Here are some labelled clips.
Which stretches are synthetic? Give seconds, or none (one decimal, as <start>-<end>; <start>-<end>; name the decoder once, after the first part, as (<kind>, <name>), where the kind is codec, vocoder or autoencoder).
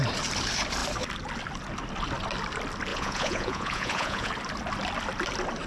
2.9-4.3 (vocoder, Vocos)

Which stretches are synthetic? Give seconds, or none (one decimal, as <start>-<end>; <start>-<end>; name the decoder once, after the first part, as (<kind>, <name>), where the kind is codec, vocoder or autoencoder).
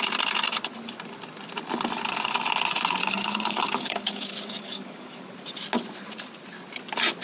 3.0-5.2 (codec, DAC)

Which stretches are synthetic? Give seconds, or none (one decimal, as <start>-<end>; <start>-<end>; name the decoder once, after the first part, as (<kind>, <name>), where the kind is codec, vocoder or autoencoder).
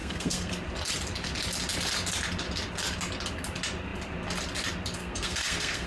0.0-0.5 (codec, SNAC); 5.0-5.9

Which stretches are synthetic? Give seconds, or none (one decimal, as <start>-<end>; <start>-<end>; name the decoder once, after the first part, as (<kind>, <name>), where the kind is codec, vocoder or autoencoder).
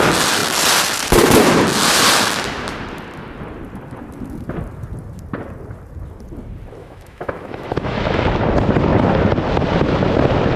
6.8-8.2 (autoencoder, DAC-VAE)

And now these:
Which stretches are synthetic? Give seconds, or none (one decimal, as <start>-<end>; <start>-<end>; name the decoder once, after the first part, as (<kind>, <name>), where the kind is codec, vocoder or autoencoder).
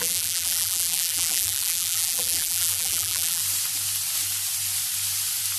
0.0-3.4 (vocoder, BigVGAN v2)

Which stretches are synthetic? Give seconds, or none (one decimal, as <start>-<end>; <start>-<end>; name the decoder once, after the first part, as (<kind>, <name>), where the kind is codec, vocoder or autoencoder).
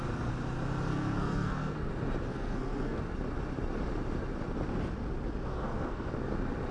0.9-1.9 (codec, SNAC); 2.3-3.0; 5.5-6.1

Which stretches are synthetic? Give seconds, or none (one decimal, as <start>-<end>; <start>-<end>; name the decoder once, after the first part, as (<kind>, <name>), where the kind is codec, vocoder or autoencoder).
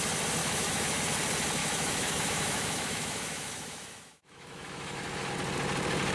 0.4-1.0 (autoencoder, DAC-VAE); 1.6-5.3